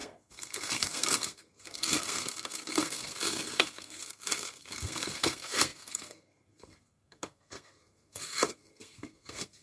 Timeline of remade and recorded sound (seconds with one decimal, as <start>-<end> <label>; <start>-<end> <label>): 0.0-9.6 remade